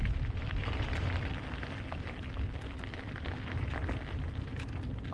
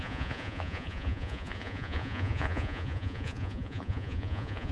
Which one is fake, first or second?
second